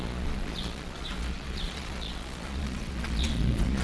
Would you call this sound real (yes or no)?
no